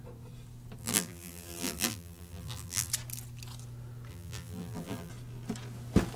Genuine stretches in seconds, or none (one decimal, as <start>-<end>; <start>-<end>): 0.0-0.8; 2.9-4.1; 5.1-6.2